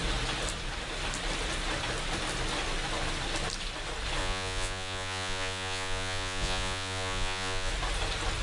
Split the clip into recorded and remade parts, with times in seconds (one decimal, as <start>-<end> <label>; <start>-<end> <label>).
0.0-4.2 recorded; 4.2-7.7 remade; 7.7-8.4 recorded